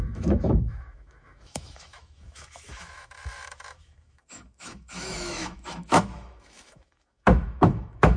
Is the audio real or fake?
fake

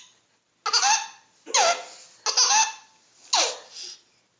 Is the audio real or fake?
real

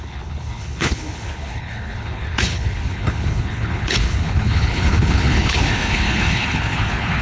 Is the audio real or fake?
fake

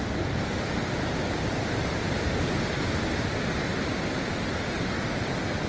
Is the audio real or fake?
real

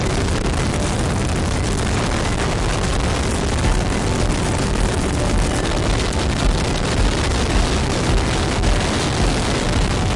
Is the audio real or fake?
real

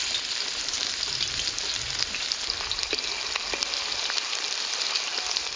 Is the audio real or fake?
real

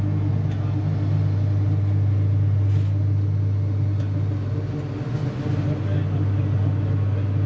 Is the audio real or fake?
real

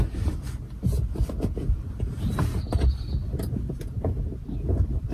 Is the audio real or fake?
real